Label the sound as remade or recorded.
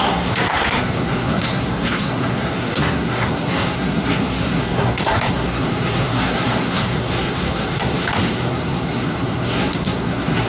remade